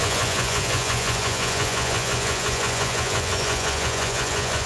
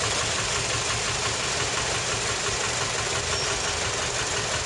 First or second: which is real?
second